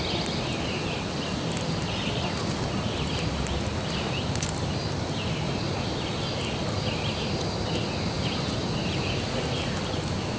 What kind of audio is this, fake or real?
real